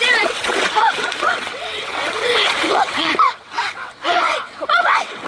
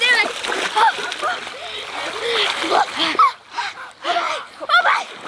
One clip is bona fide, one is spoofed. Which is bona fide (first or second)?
second